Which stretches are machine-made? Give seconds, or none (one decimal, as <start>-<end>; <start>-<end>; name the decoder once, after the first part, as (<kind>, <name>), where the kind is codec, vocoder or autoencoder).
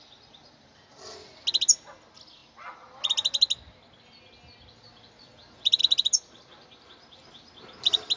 none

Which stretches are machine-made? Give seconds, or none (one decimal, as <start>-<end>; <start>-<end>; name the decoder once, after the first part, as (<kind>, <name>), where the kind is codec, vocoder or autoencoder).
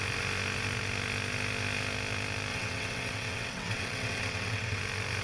2.5-4.8 (vocoder, WaveNeXt)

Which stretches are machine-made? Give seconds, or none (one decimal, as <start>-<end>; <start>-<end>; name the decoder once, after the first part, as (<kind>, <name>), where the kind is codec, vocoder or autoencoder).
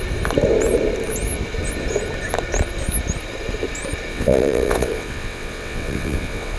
4.1-6.6 (vocoder, WaveNeXt)